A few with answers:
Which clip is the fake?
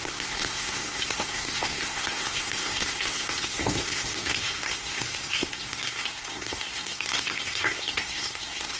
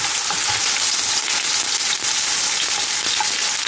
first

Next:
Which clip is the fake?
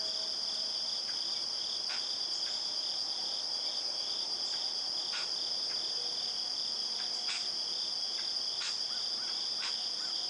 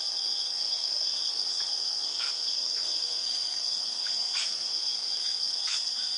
second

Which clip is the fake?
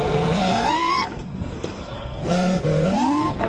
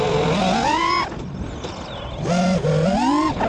first